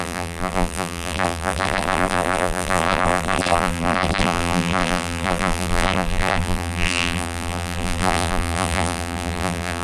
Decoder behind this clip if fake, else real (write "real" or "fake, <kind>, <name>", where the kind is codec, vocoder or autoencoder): fake, vocoder, BigVGAN v2